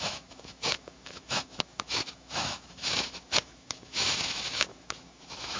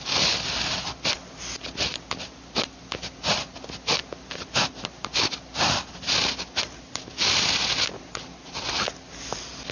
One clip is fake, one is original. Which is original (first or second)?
second